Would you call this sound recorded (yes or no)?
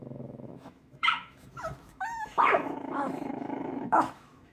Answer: no